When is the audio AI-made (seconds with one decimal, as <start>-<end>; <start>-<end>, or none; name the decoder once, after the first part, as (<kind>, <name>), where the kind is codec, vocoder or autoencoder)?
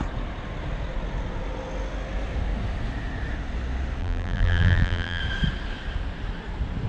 4.0-5.2 (vocoder, BigVGAN v2)